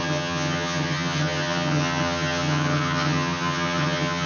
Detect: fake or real fake